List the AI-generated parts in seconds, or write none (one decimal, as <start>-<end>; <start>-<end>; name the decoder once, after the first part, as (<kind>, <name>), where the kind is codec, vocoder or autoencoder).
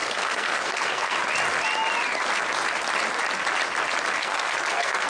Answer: 0.0-1.2 (codec, SNAC); 4.2-5.1